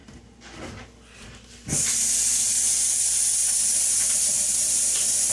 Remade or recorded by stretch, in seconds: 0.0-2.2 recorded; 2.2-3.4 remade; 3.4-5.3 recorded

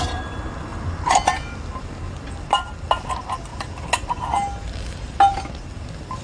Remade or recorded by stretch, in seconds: 0.0-0.7 remade; 0.7-1.8 recorded; 1.8-3.5 remade; 3.5-4.6 recorded; 4.6-6.2 remade